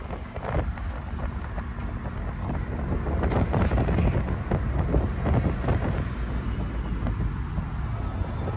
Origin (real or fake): real